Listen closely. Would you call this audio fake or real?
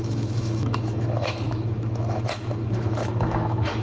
fake